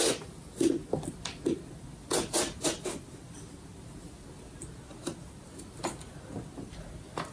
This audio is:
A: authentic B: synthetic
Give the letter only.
A